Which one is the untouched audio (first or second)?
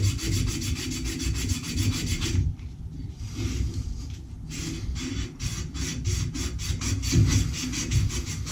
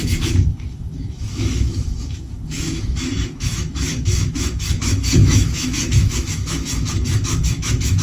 first